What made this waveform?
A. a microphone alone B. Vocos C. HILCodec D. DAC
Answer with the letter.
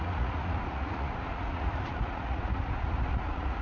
B